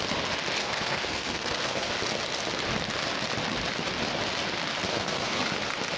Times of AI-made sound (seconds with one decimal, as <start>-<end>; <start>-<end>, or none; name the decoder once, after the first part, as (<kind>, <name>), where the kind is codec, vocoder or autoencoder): 0.6-1.9 (codec, SNAC); 4.9-5.4